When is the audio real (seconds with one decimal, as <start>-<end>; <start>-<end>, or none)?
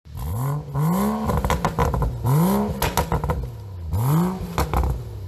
0.0-5.3